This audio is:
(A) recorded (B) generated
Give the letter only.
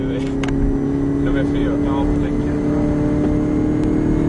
A